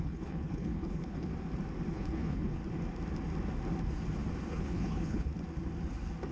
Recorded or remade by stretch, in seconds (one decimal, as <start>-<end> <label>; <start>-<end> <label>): 0.0-1.3 remade; 1.3-1.9 recorded; 1.9-2.6 remade; 2.6-4.5 recorded; 4.5-5.3 remade; 5.3-6.3 recorded

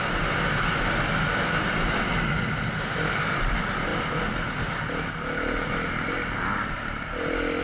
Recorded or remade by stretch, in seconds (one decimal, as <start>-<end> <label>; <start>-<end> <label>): 0.0-7.6 recorded

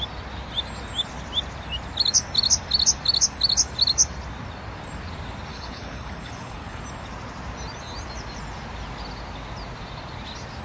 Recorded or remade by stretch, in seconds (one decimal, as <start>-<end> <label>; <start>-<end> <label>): 0.0-5.5 recorded; 5.5-6.8 remade; 6.8-10.6 recorded

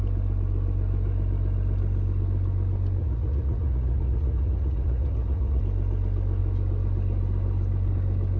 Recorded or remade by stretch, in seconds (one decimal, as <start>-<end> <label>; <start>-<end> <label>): 0.0-3.0 recorded; 3.0-5.6 remade; 5.6-8.4 recorded